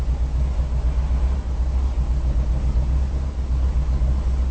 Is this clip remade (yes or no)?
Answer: no